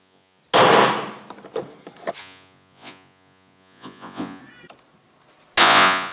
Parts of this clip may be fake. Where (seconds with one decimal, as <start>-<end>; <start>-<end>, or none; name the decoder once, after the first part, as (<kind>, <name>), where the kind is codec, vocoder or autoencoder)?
0.0-0.4 (vocoder, Vocos); 2.2-4.4; 5.6-6.1